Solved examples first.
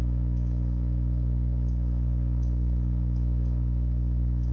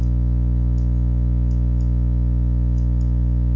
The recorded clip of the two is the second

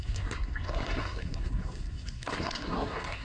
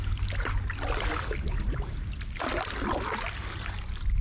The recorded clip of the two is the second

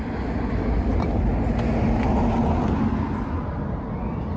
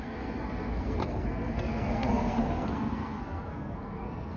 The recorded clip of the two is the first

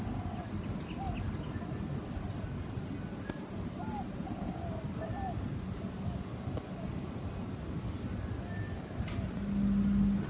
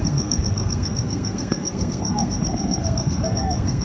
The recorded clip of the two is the first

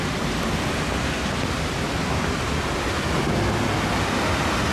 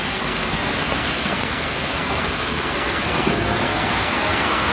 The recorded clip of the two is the first